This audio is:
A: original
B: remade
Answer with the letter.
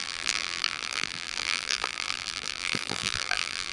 B